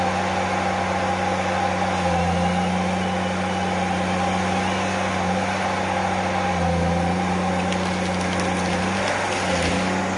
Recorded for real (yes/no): yes